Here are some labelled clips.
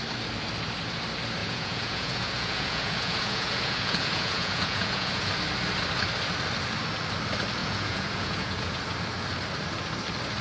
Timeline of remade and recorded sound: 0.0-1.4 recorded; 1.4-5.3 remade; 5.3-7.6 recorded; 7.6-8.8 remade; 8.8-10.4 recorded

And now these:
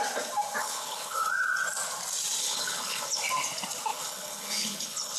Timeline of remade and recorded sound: 0.0-0.6 recorded; 0.6-1.3 remade; 1.3-2.4 recorded; 2.4-3.2 remade; 3.2-3.9 recorded; 3.9-5.2 remade

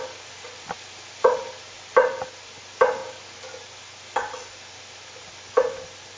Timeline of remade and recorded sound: 0.0-6.2 recorded

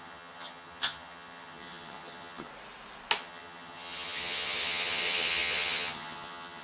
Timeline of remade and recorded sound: 0.0-2.5 remade; 2.5-3.2 recorded; 3.2-6.6 remade

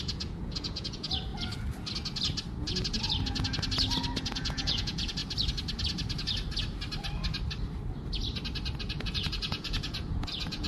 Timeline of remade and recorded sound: 0.0-1.3 remade; 1.3-4.3 recorded; 4.3-5.2 remade; 5.2-8.8 recorded; 8.8-10.7 remade

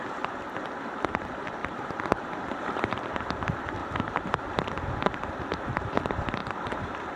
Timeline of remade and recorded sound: 0.0-1.6 recorded; 1.6-3.2 remade; 3.2-3.8 recorded; 3.8-4.3 remade; 4.3-6.4 recorded; 6.4-7.2 remade

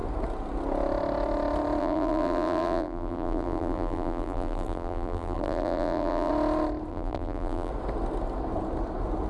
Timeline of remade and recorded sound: 0.0-1.8 recorded; 1.8-6.3 remade; 6.3-6.9 recorded; 6.9-7.7 remade; 7.7-9.3 recorded

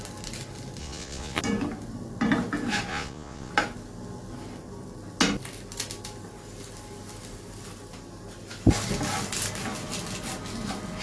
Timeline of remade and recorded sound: 0.0-0.8 recorded; 0.8-1.4 remade; 1.4-2.9 recorded; 2.9-3.5 remade; 3.5-11.0 recorded